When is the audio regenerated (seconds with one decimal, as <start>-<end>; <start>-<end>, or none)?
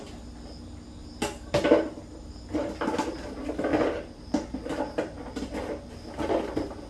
none